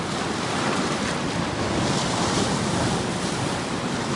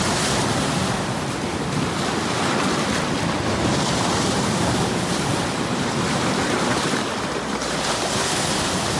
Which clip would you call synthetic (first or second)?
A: second